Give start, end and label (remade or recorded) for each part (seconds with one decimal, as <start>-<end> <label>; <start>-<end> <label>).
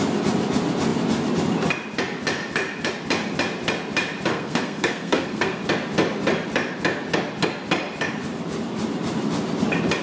0.0-4.3 recorded; 4.3-5.6 remade; 5.6-10.0 recorded